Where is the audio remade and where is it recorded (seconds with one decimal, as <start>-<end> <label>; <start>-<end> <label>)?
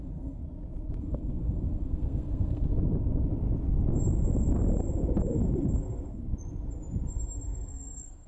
0.0-0.4 remade; 0.4-1.0 recorded; 1.0-2.7 remade; 2.7-7.7 recorded; 7.7-8.3 remade